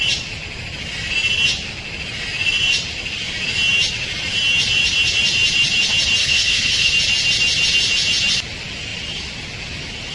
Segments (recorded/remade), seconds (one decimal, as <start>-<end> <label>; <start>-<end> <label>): 0.0-6.2 recorded; 6.2-6.9 remade; 6.9-10.1 recorded